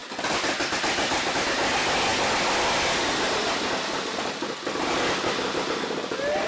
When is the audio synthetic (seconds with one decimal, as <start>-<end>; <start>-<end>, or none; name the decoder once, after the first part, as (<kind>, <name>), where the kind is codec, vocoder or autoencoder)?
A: 0.0-0.5 (vocoder, BigVGAN v2)